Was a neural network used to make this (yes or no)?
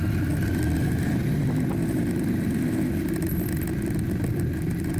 no